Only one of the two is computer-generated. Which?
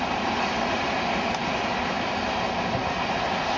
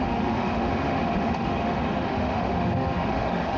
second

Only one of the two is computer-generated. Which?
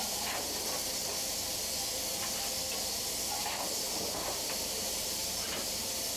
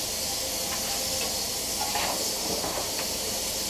first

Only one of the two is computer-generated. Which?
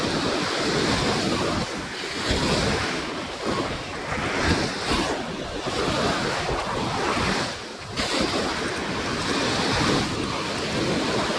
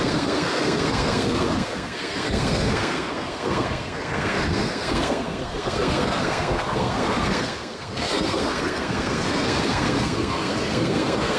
second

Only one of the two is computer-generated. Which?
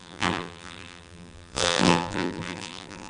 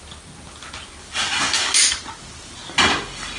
first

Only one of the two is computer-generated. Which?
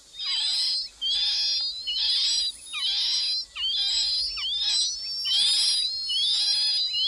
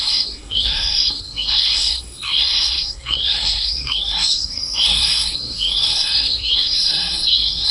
second